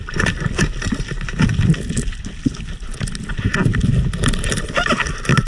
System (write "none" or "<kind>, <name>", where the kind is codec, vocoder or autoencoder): none